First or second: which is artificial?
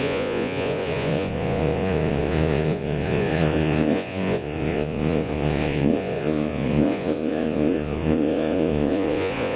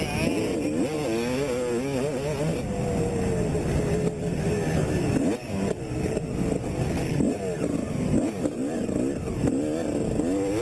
first